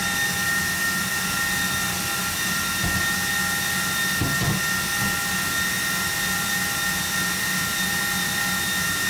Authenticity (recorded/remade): recorded